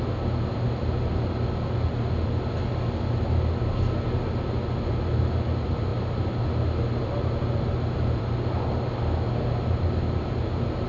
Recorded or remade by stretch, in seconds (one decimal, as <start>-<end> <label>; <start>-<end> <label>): 0.0-10.9 recorded

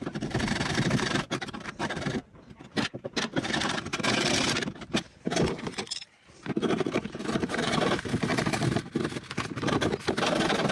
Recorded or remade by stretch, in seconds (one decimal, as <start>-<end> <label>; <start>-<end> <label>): 0.0-10.7 remade